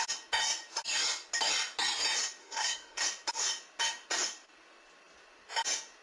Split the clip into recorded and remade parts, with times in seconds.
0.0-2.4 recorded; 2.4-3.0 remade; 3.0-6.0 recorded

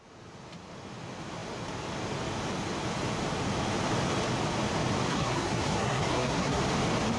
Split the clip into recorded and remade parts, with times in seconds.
0.0-5.1 recorded; 5.1-6.6 remade; 6.6-7.2 recorded

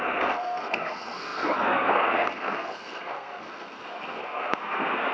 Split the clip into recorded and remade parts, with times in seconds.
0.0-5.1 remade

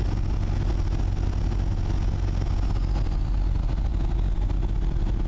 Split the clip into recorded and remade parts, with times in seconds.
0.0-5.3 recorded

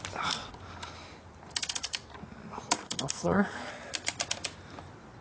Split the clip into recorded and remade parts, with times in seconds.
0.0-2.8 recorded; 2.8-3.7 remade; 3.7-5.2 recorded